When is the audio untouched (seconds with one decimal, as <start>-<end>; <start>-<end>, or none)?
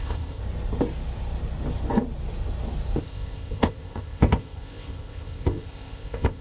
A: 0.4-3.0